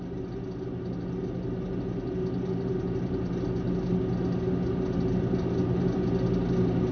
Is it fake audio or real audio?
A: real